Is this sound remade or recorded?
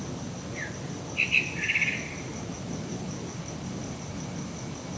recorded